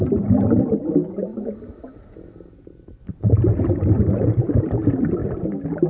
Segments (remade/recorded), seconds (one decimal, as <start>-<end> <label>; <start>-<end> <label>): 0.0-5.9 recorded

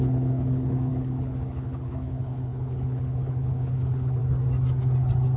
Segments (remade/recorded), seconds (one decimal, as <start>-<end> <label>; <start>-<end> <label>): 0.0-4.2 remade; 4.2-5.4 recorded